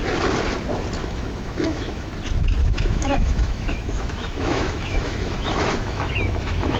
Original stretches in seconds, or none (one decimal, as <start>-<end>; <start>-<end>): 0.0-1.0; 2.1-2.6